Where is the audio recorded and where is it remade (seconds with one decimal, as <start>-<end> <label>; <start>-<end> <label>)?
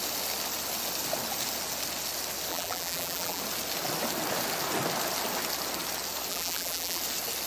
0.0-2.5 recorded; 2.5-3.4 remade; 3.4-6.3 recorded; 6.3-7.0 remade; 7.0-7.5 recorded